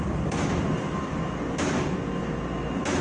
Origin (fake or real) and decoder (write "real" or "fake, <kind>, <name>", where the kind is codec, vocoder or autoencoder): real